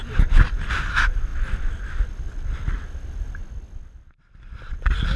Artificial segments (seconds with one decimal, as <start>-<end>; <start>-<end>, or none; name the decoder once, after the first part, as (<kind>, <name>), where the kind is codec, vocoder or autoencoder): 0.0-1.3 (vocoder, BigVGAN v2); 1.8-3.4; 3.9-5.2